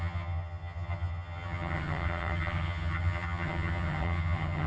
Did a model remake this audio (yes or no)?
yes